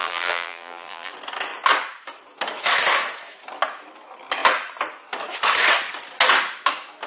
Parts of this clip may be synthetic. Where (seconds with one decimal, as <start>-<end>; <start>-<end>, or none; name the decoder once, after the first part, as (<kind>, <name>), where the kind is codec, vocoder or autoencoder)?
0.0-1.1 (vocoder, BigVGAN v2)